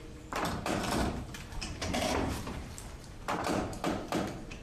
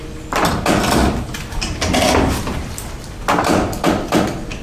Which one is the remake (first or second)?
first